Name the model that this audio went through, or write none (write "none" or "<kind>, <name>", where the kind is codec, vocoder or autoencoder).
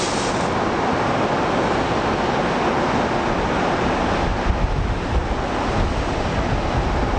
none